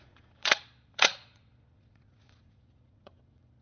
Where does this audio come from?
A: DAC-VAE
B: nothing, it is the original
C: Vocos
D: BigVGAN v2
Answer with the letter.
C